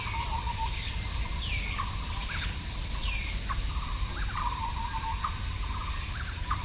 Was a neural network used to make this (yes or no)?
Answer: no